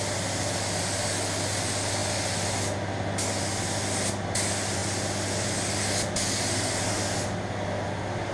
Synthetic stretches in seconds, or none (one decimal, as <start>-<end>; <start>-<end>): none